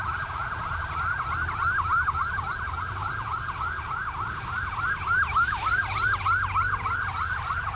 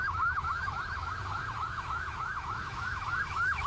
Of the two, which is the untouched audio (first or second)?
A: first